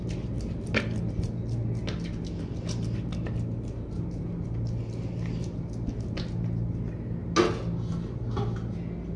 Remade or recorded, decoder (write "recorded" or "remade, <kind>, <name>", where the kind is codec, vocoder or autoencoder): recorded